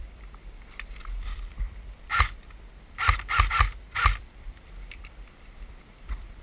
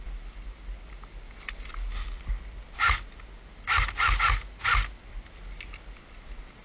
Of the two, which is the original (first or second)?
second